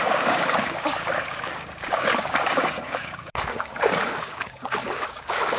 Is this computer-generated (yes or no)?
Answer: yes